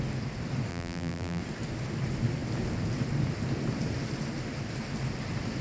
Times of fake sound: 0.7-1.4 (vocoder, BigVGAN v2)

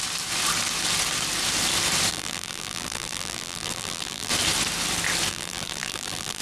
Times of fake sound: 2.1-4.3 (vocoder, BigVGAN v2); 5.3-6.4

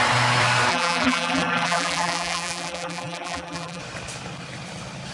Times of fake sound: 0.7-3.8 (vocoder, BigVGAN v2)

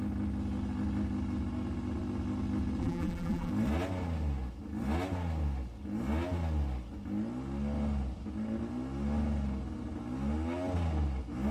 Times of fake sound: 2.8-3.5 (vocoder, BigVGAN v2)

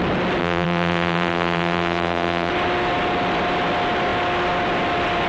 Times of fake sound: 0.4-2.5 (vocoder, BigVGAN v2)

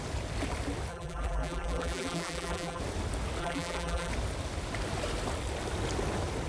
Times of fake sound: 0.9-2.8 (vocoder, BigVGAN v2); 3.4-4.1